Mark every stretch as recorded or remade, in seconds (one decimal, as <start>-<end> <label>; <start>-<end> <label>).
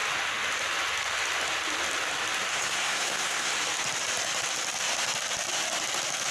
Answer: 0.0-2.5 recorded; 2.5-3.5 remade; 3.5-6.3 recorded